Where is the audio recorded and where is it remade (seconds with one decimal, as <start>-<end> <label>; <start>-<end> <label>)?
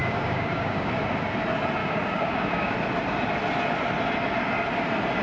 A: 0.0-0.9 remade; 0.9-1.8 recorded; 1.8-2.7 remade; 2.7-5.2 recorded